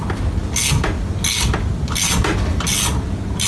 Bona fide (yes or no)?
yes